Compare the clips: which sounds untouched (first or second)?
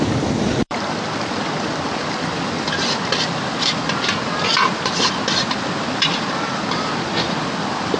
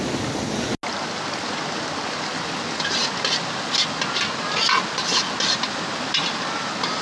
second